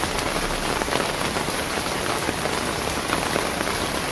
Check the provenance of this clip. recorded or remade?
recorded